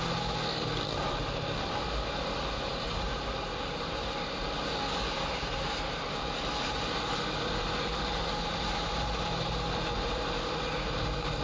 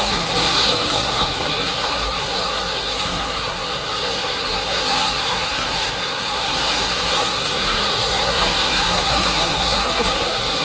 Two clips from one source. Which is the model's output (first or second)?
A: second